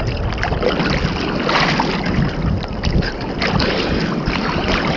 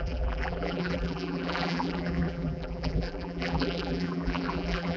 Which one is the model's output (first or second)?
second